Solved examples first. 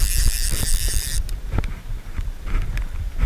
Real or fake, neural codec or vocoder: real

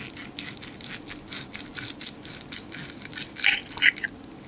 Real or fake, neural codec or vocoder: real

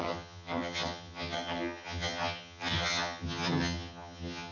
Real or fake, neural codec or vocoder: fake, vocoder, HiFi-GAN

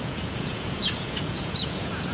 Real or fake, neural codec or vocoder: fake, vocoder, Vocos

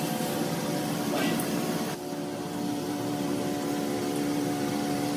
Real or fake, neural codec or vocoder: real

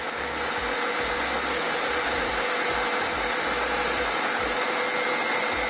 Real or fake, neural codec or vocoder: real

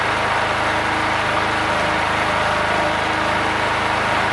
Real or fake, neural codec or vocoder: real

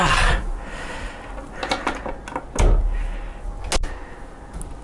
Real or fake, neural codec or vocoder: real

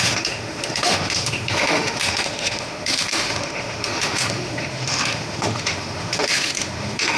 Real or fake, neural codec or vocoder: fake, autoencoder, DAC-VAE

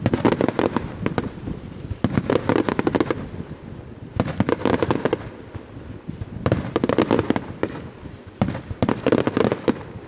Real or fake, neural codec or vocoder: real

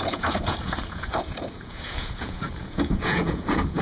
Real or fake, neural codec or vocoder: fake, vocoder, Vocos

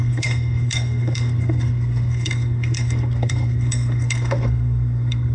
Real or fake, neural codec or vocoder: fake, codec, SNAC